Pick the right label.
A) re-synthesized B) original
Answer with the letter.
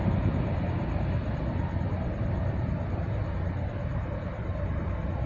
B